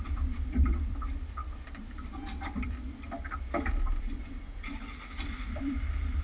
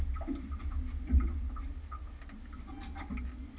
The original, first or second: second